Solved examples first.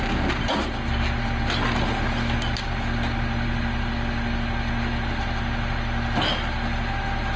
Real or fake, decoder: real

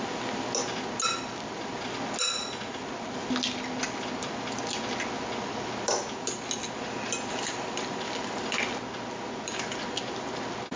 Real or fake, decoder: real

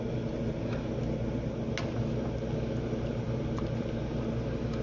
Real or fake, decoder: real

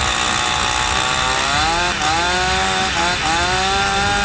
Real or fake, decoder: real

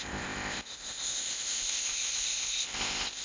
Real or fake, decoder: fake, codec, ZipCodec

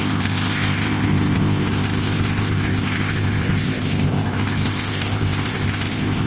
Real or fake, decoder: fake, codec, ZipCodec